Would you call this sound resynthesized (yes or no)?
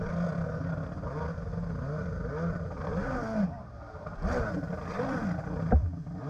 no